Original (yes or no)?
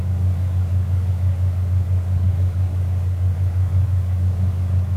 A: no